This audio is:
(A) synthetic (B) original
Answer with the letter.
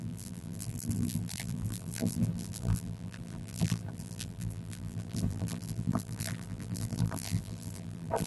A